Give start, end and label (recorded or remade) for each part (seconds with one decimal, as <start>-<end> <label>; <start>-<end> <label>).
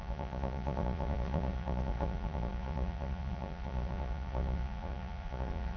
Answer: 0.0-5.8 remade